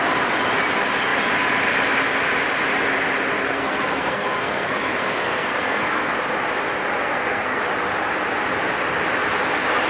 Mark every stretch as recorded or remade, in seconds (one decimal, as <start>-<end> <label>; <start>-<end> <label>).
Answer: 0.0-3.4 recorded; 3.4-6.1 remade; 6.1-7.0 recorded; 7.0-7.6 remade; 7.6-9.9 recorded